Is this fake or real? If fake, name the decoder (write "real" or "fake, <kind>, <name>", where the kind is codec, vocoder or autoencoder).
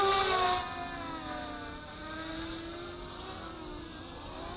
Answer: real